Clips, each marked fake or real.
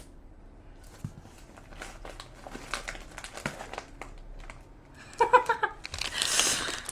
real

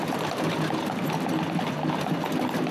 real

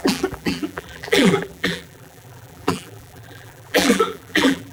fake